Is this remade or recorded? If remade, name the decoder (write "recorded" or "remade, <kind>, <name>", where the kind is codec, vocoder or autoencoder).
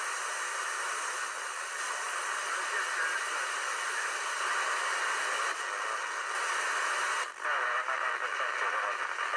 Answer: recorded